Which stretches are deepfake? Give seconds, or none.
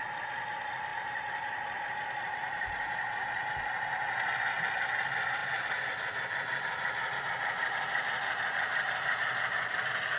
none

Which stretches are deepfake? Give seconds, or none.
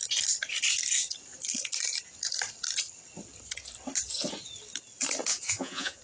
5.3-6.0 (vocoder, Vocos)